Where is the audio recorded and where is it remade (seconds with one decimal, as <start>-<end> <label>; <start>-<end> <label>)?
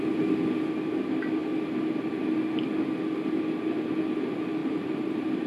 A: 0.0-4.6 recorded; 4.6-5.5 remade